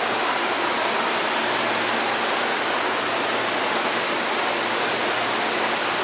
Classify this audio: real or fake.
real